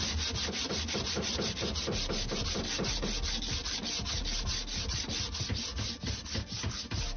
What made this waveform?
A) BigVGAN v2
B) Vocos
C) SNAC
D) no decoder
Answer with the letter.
D